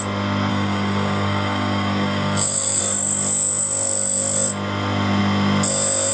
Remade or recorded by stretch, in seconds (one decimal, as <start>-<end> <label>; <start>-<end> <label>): 0.0-0.5 recorded; 0.5-2.8 remade; 2.8-6.1 recorded